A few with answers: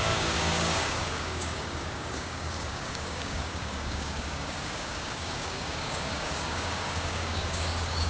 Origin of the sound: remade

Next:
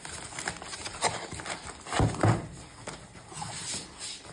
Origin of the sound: recorded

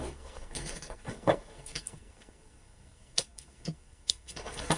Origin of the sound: remade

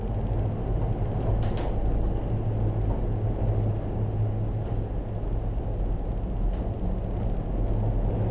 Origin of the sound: recorded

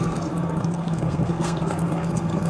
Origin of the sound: remade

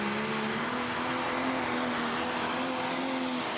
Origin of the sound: recorded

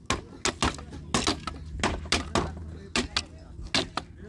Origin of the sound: recorded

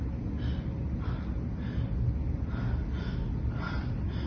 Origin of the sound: recorded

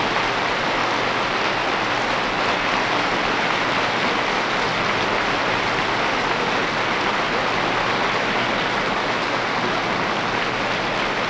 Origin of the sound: recorded